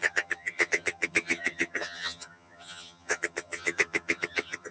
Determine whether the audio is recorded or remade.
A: remade